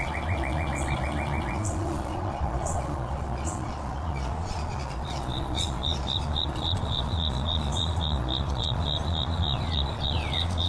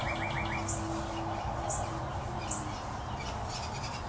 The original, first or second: second